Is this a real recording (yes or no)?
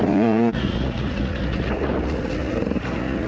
no